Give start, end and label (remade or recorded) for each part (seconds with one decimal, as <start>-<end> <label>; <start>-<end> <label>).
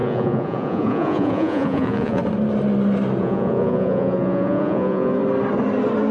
0.0-2.2 remade; 2.2-3.2 recorded; 3.2-5.2 remade; 5.2-6.1 recorded